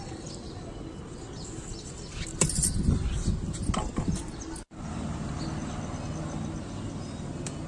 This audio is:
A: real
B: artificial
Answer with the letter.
A